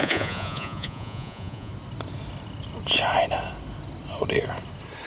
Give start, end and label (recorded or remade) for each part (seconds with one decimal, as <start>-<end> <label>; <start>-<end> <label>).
0.0-1.7 remade; 1.7-5.1 recorded

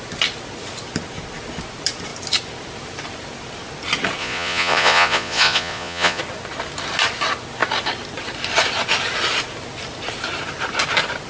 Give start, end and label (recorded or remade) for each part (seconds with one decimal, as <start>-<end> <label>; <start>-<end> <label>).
0.0-4.2 recorded; 4.2-6.2 remade; 6.2-11.3 recorded

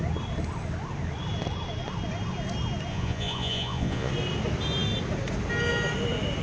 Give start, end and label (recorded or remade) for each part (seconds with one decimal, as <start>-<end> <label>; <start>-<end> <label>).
0.0-2.9 recorded; 2.9-4.1 remade; 4.1-6.4 recorded

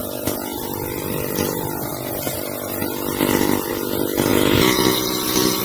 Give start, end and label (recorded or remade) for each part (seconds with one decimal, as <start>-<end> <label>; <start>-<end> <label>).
0.0-0.6 remade; 0.6-4.3 recorded; 4.3-5.6 remade

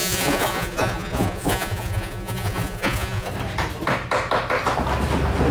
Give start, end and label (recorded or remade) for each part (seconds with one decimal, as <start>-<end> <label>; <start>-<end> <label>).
0.0-3.3 remade; 3.3-5.5 recorded

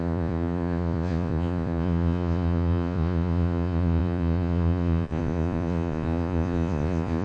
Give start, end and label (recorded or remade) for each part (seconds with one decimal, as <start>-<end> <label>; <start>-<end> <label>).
0.0-7.2 remade

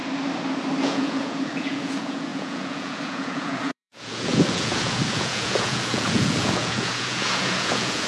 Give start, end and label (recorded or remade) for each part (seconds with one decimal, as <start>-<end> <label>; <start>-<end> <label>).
0.0-0.8 recorded; 0.8-8.1 remade